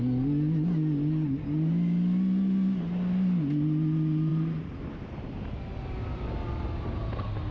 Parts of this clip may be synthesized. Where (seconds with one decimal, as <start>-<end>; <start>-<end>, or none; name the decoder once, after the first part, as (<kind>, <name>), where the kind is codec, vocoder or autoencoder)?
none